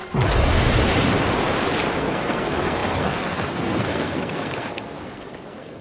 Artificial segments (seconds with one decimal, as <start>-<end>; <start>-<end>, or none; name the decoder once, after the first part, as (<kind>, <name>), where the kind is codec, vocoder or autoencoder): 2.0-5.8 (codec, SNAC)